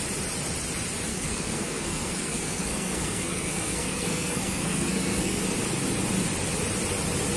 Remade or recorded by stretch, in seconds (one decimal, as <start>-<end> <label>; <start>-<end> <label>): 0.0-1.1 recorded; 1.1-5.4 remade; 5.4-7.4 recorded